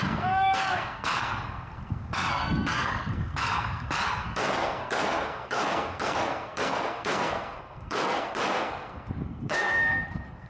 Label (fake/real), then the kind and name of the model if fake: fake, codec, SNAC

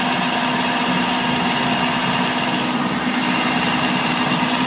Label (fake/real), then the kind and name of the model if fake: real